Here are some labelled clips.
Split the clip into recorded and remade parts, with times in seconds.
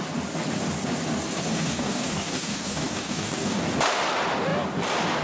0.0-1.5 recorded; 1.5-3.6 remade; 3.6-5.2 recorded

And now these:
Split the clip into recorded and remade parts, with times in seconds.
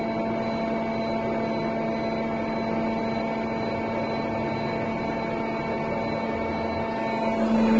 0.0-7.8 recorded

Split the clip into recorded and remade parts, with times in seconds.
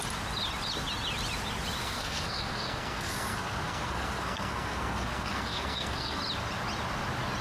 0.0-1.8 recorded; 1.8-6.2 remade; 6.2-7.4 recorded